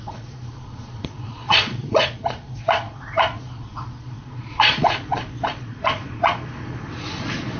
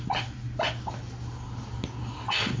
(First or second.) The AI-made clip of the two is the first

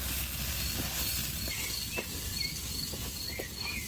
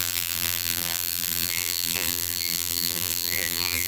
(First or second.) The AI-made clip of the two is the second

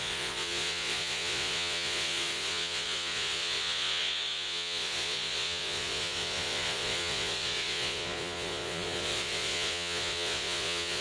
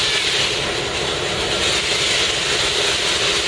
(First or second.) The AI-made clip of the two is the first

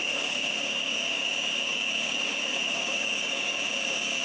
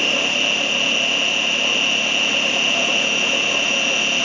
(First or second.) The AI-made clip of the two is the first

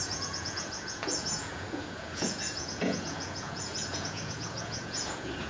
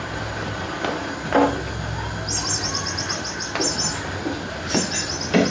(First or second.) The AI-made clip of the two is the first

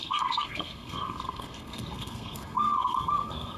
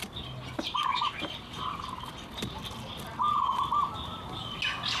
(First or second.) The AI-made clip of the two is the first